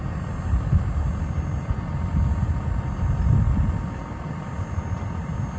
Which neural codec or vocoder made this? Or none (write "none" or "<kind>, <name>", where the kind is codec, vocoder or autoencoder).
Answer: none